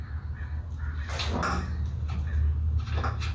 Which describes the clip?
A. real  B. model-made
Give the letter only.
A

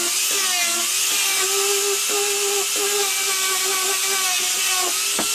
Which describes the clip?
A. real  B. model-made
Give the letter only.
A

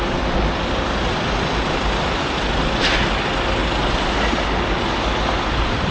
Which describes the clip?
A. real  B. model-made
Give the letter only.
A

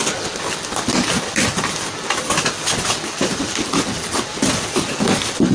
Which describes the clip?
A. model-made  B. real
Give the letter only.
B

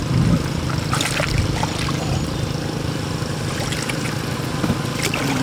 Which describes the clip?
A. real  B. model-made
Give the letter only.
A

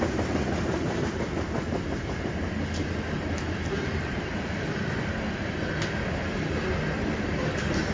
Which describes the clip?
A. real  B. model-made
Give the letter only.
A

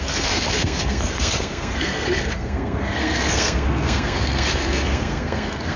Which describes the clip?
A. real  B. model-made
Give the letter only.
B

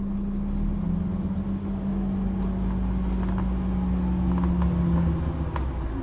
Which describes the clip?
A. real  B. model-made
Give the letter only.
A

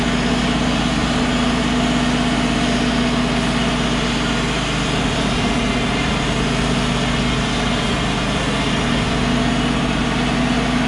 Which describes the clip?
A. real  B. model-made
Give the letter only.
A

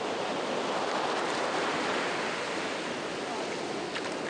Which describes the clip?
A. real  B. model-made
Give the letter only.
A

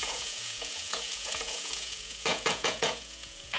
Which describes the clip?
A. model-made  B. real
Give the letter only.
A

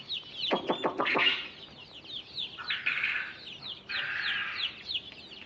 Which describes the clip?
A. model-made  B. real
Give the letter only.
B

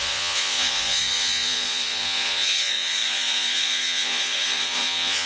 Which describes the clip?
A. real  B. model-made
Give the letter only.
B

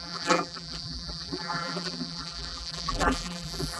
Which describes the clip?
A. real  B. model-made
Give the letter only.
B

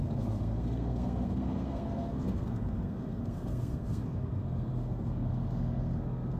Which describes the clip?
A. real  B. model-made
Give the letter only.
B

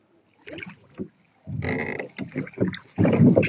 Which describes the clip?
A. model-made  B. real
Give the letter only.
B